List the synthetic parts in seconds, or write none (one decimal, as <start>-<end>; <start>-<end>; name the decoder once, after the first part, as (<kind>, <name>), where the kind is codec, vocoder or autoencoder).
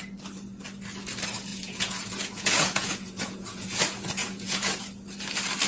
1.5-3.8 (vocoder, Vocos); 4.2-4.8